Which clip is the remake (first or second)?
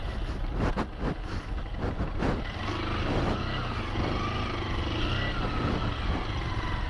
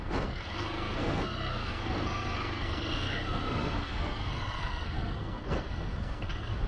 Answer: second